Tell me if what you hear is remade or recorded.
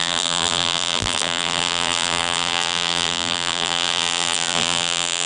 remade